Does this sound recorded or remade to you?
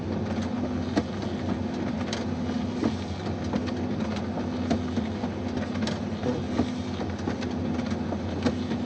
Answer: recorded